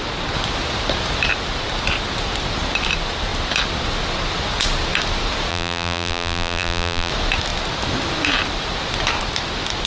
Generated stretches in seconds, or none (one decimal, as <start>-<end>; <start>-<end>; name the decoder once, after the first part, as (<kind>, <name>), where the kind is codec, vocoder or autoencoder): 5.5-7.1 (vocoder, BigVGAN v2)